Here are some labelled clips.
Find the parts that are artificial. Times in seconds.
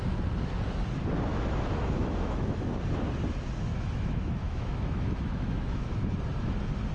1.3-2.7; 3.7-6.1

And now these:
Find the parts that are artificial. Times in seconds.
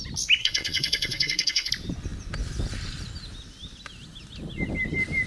0.4-1.7